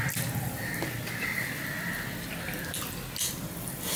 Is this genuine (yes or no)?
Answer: yes